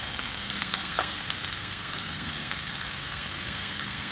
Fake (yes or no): yes